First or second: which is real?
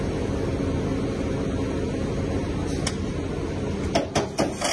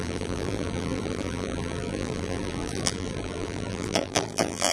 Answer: first